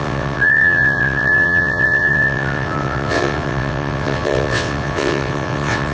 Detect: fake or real fake